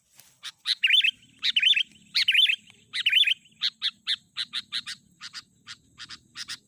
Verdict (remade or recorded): recorded